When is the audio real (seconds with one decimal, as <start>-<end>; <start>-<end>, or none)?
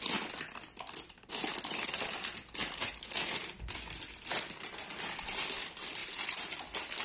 0.0-2.6; 3.4-6.0; 6.6-7.0